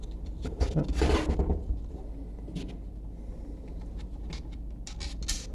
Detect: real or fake real